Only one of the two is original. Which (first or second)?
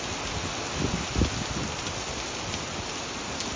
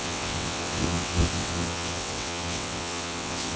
first